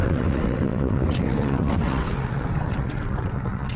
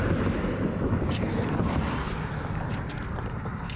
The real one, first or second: second